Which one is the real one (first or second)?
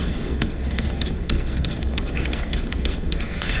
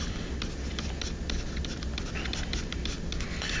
second